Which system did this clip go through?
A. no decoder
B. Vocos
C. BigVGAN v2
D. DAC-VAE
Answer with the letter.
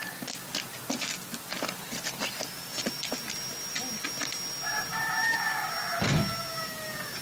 A